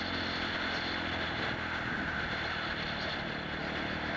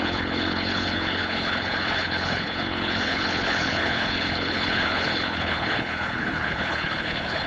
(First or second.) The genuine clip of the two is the first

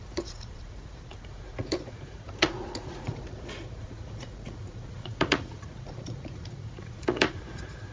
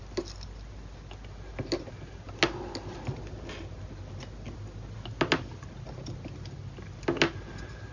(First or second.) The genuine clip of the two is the second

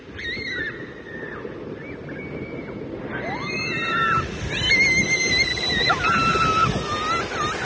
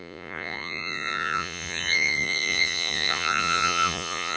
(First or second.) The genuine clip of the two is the first